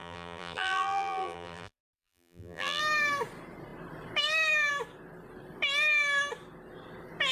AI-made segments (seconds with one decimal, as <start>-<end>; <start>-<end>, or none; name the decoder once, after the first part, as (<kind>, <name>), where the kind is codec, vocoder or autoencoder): 0.0-2.8 (vocoder, BigVGAN v2)